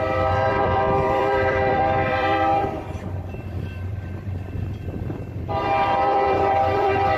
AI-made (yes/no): yes